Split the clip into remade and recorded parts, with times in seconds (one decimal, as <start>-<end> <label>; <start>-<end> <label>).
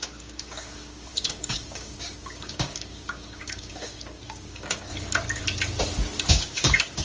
0.0-4.9 remade; 4.9-6.3 recorded; 6.3-7.0 remade